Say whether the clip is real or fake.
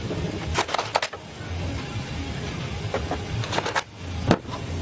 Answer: real